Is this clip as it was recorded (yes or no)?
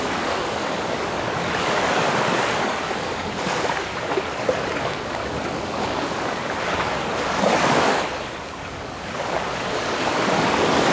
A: no